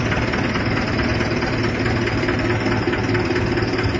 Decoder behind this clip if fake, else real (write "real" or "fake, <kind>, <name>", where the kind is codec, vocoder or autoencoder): real